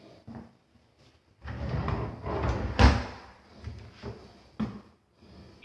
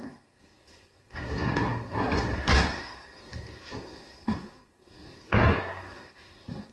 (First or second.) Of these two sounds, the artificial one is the second